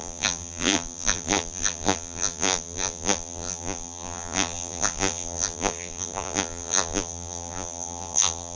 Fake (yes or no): yes